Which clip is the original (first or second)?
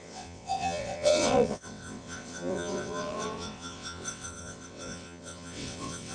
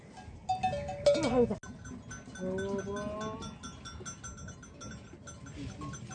second